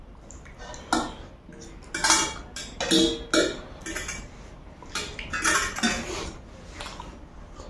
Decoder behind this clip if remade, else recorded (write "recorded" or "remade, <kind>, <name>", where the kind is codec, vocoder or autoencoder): recorded